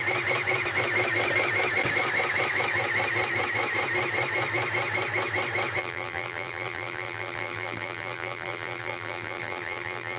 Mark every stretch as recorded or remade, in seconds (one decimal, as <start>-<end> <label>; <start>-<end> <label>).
0.0-5.8 recorded; 5.8-10.2 remade